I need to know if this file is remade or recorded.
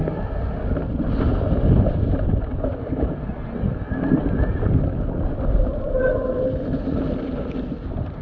recorded